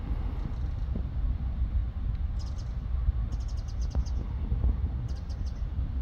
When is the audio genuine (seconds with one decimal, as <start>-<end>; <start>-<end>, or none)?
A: 0.0-6.0